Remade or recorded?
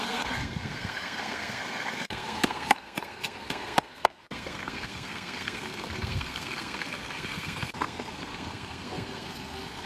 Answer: remade